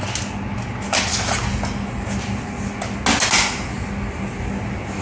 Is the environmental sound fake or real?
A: real